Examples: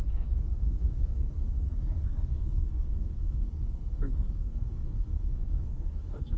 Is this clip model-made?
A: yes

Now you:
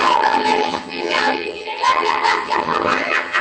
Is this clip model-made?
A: yes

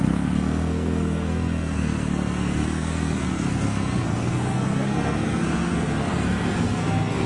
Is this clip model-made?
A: yes